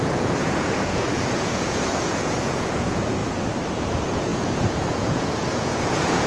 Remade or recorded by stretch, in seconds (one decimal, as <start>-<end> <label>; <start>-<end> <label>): 0.0-3.2 remade; 3.2-3.8 recorded; 3.8-6.3 remade